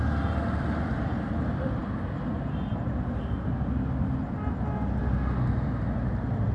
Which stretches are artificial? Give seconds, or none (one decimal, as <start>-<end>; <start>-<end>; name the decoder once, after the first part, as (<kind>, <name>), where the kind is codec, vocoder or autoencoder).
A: none